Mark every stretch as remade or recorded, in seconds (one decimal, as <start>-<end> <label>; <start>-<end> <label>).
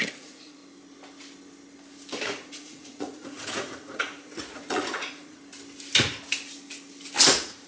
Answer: 0.0-0.6 remade; 0.6-2.2 recorded; 2.2-5.4 remade; 5.4-7.3 recorded; 7.3-7.7 remade